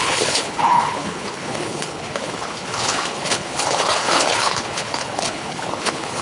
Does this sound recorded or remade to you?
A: remade